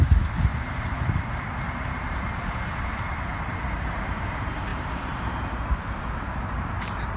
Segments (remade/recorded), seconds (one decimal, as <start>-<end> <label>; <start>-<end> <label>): 0.0-7.2 remade